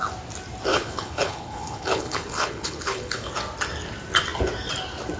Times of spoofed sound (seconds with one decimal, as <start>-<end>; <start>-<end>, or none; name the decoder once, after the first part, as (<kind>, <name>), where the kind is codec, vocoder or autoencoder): 0.7-3.3 (codec, HILCodec)